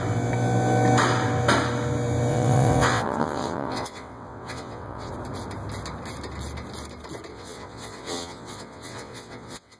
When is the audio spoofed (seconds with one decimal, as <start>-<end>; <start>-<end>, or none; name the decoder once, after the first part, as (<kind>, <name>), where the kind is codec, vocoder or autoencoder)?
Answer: 2.3-5.1 (vocoder, WaveNeXt); 7.3-9.8